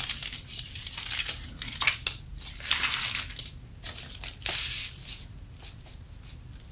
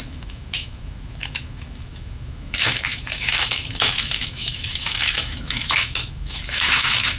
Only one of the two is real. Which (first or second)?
first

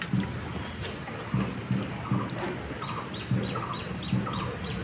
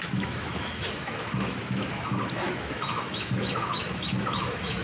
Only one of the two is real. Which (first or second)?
first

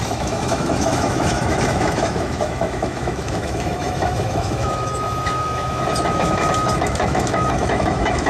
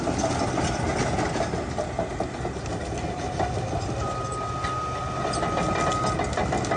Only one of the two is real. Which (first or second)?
second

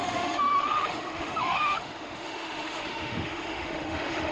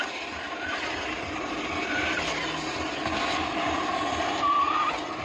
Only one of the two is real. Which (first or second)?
second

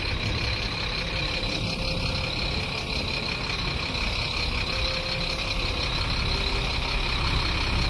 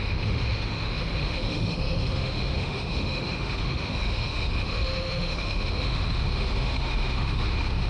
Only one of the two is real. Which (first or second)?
first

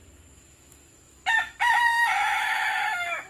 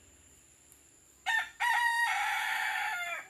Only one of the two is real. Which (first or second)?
second